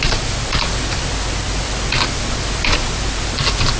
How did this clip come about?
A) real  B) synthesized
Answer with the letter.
A